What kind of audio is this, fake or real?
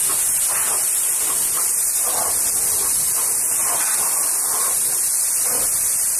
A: fake